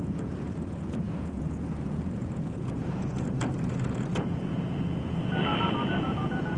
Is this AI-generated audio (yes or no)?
yes